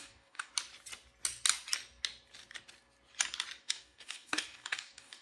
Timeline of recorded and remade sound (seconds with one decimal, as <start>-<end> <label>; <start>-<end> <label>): 0.0-0.5 remade; 0.5-3.6 recorded; 3.6-5.2 remade